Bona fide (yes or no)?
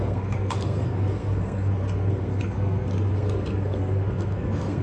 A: no